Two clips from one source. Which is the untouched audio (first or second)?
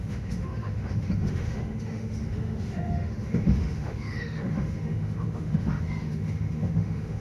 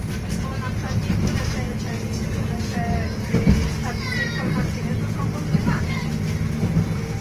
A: second